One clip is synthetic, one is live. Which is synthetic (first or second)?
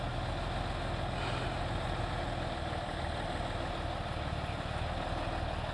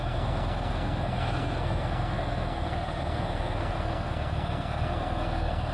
second